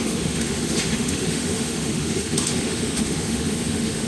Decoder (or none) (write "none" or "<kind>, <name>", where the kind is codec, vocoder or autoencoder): autoencoder, DAC-VAE